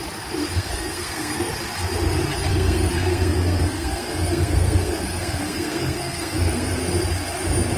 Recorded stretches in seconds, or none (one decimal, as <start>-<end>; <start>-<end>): 0.0-0.4; 1.5-2.5; 6.8-7.8